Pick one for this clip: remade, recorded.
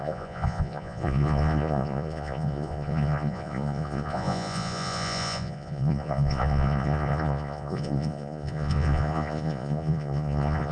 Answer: remade